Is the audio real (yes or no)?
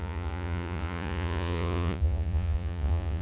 no